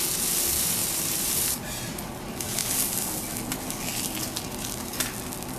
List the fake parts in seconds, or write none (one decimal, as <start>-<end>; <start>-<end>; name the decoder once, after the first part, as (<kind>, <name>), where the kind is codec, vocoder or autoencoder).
0.8-1.8 (vocoder, BigVGAN v2)